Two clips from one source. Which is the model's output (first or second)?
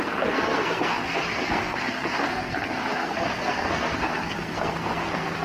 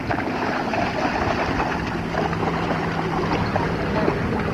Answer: first